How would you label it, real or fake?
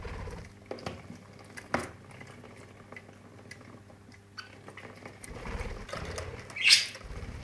real